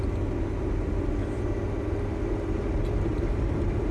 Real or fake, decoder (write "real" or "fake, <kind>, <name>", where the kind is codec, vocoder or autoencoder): real